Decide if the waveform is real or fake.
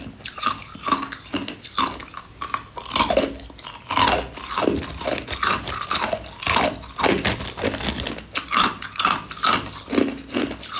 real